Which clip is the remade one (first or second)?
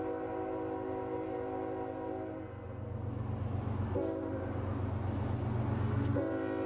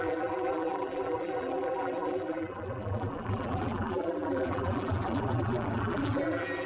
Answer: second